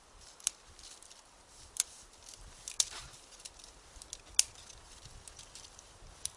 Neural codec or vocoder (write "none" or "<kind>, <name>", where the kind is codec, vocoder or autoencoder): none